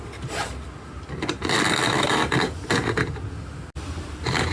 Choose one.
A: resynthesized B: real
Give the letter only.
B